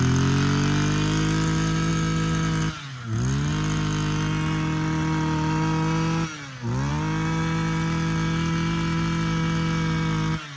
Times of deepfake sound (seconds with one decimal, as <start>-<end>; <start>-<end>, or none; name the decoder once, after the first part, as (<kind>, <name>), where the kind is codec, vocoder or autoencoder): none